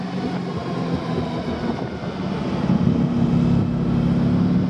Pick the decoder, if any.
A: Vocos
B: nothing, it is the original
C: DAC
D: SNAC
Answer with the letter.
B